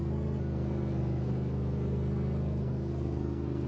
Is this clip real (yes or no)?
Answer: no